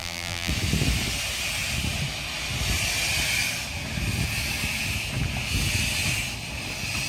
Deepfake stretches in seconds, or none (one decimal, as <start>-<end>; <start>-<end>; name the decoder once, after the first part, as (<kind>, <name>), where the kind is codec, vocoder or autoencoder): 0.0-0.5 (vocoder, BigVGAN v2)